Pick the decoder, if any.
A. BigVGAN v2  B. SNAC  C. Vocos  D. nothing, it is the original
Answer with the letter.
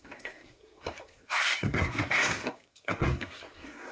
B